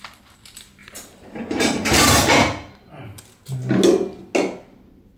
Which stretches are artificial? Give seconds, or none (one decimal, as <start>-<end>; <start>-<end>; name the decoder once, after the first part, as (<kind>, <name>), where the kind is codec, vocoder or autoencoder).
0.8-2.3 (vocoder, BigVGAN v2)